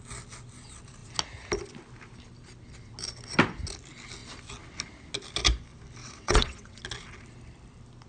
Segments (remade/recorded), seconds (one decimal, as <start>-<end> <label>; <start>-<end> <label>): 0.0-6.0 recorded; 6.0-6.8 remade; 6.8-8.1 recorded